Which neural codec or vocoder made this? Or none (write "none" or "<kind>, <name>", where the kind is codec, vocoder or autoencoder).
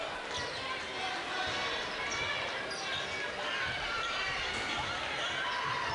none